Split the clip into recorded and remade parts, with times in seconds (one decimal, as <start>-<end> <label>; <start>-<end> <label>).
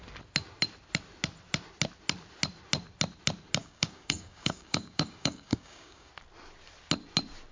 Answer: 0.0-3.6 recorded; 3.6-6.1 remade; 6.1-7.5 recorded